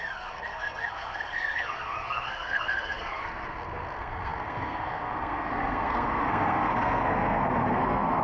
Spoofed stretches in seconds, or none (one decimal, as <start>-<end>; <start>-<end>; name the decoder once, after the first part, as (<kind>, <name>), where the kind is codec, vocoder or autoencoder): 0.0-8.2 (codec, SNAC)